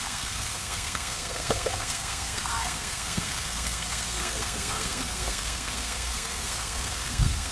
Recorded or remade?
remade